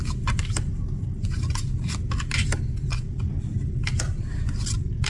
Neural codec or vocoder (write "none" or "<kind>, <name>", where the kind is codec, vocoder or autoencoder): none